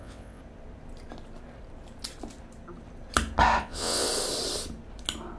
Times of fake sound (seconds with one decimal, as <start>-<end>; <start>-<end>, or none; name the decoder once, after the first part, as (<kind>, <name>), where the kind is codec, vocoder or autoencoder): 0.0-0.4 (vocoder, WaveNeXt); 3.6-4.1